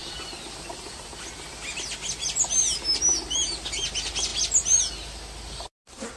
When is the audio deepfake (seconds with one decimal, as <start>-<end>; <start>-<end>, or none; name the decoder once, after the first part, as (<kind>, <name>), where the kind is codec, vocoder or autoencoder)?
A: none